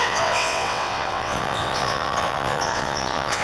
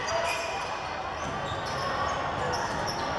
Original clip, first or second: second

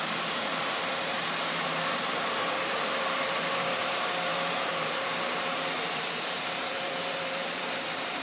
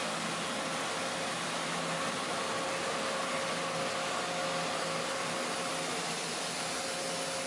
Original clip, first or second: second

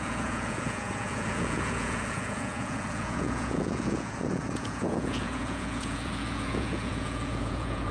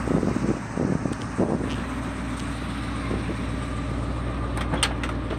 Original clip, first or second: second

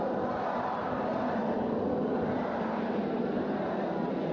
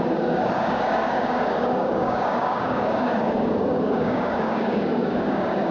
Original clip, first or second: first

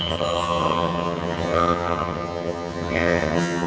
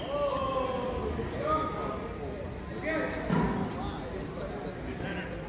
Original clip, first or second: second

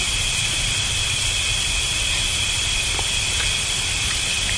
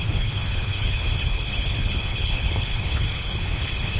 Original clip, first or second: first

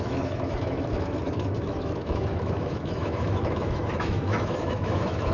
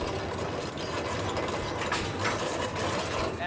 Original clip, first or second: second